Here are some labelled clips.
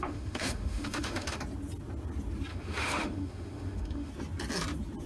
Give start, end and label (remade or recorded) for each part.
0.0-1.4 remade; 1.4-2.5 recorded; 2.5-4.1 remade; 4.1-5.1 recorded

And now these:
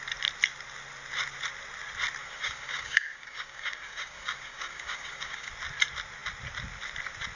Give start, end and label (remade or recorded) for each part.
0.0-2.2 recorded; 2.2-5.5 remade; 5.5-7.4 recorded

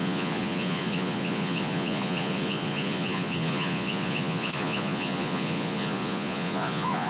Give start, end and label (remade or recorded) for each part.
0.0-7.1 remade

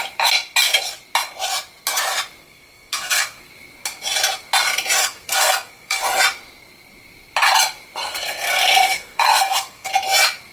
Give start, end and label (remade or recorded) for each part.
0.0-2.4 recorded; 2.4-3.5 remade; 3.5-5.0 recorded; 5.0-6.0 remade; 6.0-8.0 recorded; 8.0-9.9 remade; 9.9-10.5 recorded

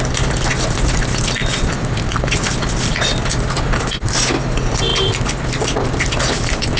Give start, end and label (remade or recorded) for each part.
0.0-6.8 recorded

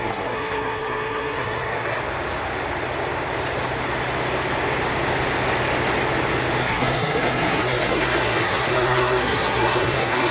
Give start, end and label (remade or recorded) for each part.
0.0-2.0 remade; 2.0-6.6 recorded; 6.6-10.3 remade